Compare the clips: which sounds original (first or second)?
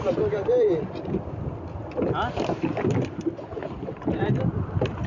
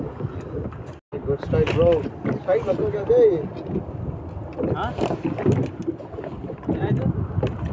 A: second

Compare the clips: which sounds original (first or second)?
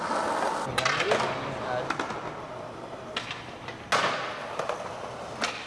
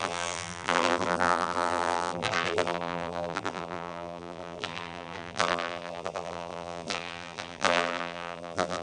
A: first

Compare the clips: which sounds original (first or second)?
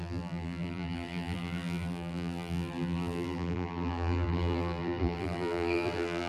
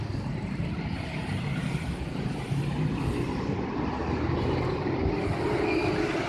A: second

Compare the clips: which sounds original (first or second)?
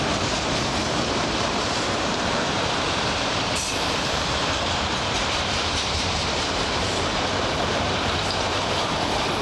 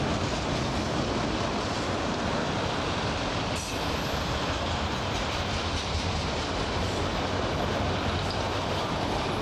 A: second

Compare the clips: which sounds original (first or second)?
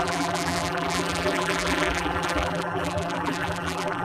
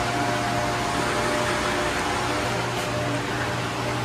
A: second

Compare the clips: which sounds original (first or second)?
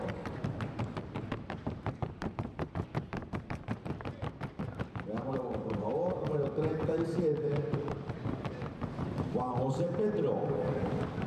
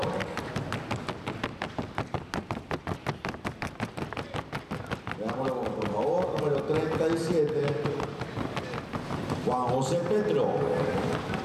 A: second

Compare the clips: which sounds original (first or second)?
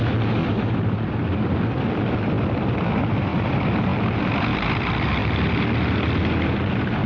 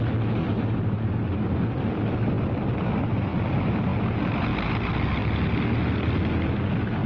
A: second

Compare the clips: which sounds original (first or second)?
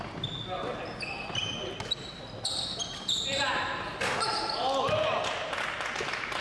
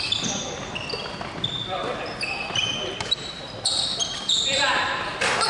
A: first